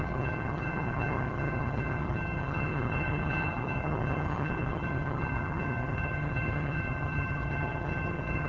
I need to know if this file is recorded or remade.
remade